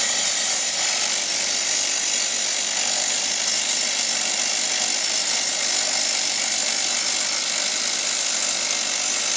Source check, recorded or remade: remade